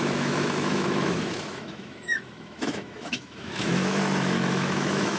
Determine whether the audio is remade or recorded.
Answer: remade